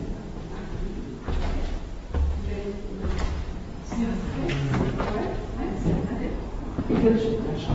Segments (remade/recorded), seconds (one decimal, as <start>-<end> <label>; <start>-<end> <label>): 0.0-7.7 recorded